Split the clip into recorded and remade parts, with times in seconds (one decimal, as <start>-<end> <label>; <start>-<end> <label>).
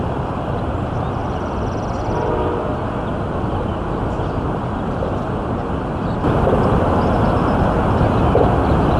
0.0-9.0 recorded